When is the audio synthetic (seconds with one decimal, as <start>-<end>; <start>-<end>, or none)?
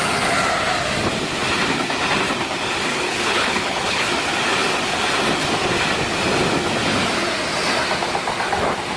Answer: 2.9-4.1